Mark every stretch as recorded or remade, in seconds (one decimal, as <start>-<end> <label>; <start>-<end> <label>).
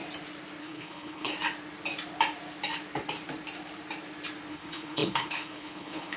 0.0-0.6 recorded; 0.6-1.3 remade; 1.3-4.5 recorded; 4.5-6.2 remade